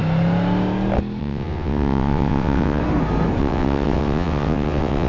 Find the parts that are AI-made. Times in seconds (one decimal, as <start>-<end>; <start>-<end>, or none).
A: 1.2-2.8; 3.4-5.1

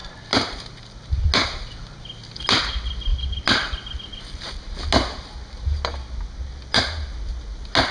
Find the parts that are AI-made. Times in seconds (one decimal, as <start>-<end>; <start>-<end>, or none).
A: none

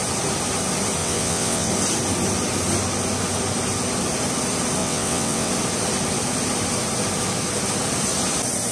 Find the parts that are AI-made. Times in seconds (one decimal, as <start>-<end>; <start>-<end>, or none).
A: 1.0-1.7; 4.8-5.5

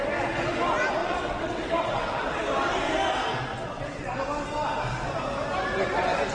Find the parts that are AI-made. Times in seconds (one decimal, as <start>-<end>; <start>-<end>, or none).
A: 1.0-2.4; 3.5-4.1

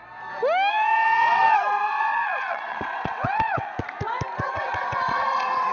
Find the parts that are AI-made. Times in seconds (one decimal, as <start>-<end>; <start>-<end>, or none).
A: 0.7-3.7; 4.5-5.7